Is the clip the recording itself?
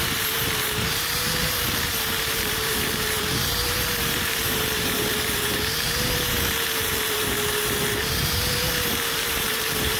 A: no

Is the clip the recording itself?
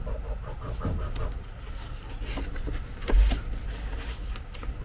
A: yes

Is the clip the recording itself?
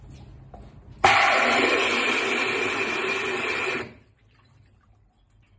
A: no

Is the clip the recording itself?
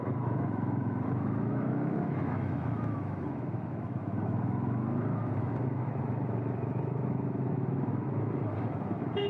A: no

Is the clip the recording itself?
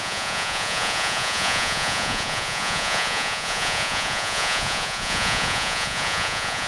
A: no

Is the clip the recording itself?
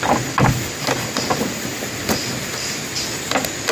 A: yes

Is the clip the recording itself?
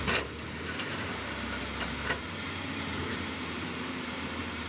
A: no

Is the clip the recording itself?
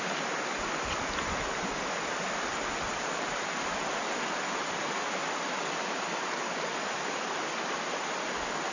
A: yes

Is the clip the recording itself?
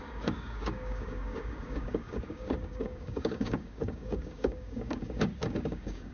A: no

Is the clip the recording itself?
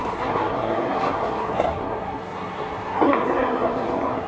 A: no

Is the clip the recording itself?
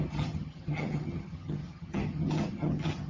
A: no